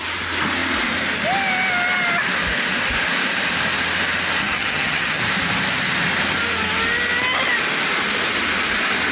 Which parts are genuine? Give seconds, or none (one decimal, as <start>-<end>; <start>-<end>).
0.0-4.4; 5.2-9.1